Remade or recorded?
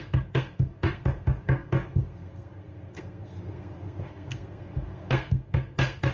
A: remade